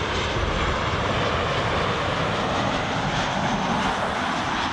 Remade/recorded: recorded